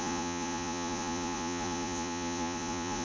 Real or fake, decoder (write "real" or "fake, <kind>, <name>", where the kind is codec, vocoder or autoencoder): fake, vocoder, Vocos